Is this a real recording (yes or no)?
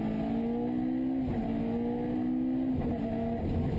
yes